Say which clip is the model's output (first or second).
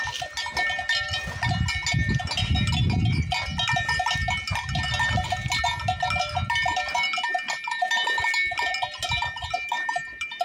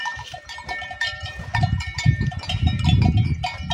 second